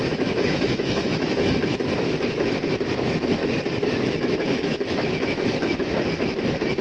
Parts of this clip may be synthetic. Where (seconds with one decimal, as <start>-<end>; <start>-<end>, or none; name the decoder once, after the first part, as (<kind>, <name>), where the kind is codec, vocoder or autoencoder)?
0.0-3.4 (autoencoder, DAC-VAE); 4.0-6.8